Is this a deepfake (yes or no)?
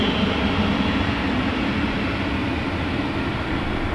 no